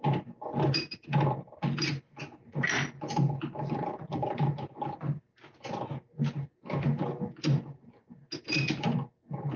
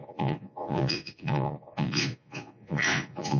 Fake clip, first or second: second